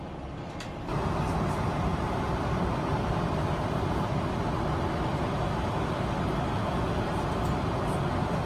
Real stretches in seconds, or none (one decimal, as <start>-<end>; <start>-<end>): 0.0-8.5